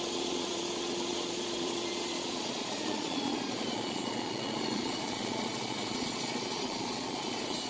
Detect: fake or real fake